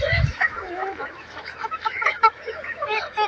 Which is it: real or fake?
fake